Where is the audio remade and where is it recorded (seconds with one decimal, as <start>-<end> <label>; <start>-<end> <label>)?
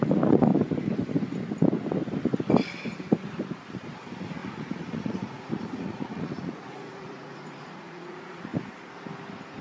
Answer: 0.0-0.5 remade; 0.5-4.0 recorded; 4.0-8.5 remade; 8.5-9.6 recorded